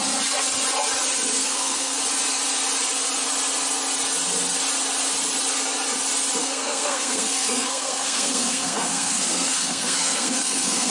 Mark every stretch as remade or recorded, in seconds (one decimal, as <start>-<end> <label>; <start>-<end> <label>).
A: 0.0-1.4 recorded; 1.4-2.0 remade; 2.0-6.4 recorded; 6.4-10.9 remade